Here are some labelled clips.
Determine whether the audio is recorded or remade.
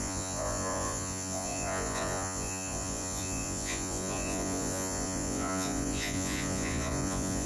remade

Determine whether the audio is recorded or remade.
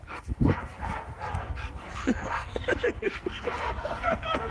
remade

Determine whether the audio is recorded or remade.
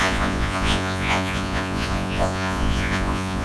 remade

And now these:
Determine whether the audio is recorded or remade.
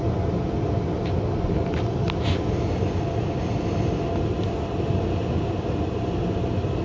recorded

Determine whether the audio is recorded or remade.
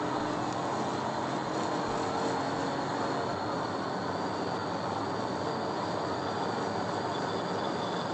recorded